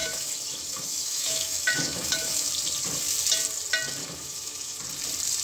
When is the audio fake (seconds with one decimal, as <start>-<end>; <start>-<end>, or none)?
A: 0.0-2.5; 4.0-4.8